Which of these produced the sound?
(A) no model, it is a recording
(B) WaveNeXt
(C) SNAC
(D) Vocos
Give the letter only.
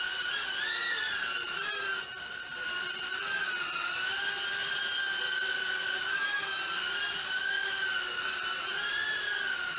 A